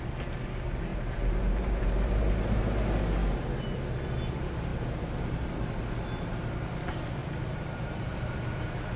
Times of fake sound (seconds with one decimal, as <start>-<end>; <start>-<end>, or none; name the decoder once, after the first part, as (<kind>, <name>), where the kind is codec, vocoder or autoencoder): 0.9-2.6 (vocoder, BigVGAN v2); 4.7-5.8; 7.2-8.1